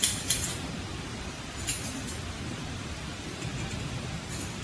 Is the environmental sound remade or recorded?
remade